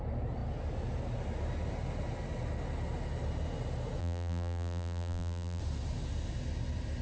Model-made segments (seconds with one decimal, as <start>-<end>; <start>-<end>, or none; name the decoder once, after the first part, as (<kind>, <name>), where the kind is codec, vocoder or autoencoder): 4.0-5.6 (vocoder, BigVGAN v2)